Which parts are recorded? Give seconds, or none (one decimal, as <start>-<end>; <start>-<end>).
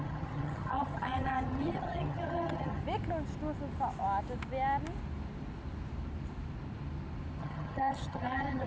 2.8-7.4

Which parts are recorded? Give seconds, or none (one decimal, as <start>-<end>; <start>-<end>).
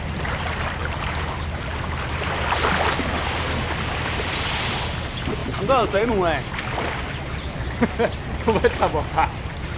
0.0-0.8; 1.3-5.4; 6.1-9.8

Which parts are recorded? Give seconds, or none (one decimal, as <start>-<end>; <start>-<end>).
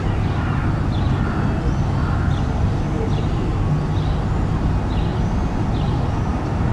0.0-6.7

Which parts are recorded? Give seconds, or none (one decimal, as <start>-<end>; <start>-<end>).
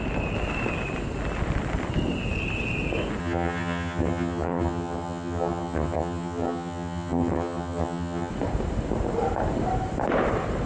0.0-3.2; 8.3-10.7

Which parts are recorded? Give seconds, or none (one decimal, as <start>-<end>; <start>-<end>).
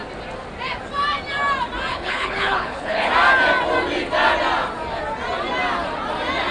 0.0-1.9; 3.1-6.5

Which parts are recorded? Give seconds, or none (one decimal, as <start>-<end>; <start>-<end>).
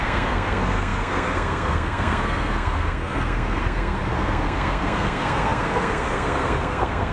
none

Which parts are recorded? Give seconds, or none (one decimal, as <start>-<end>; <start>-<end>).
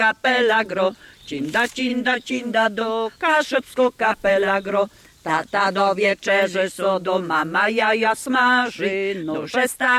0.0-1.9; 4.3-10.0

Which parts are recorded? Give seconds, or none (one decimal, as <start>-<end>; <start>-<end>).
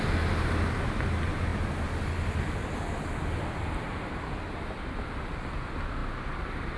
0.0-6.8